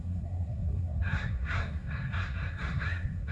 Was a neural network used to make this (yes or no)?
yes